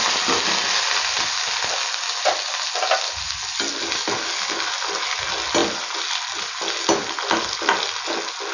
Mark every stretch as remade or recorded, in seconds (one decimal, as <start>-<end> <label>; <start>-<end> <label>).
0.0-8.5 recorded